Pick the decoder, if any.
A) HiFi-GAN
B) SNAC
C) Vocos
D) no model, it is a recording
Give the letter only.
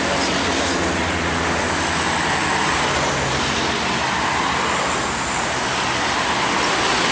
D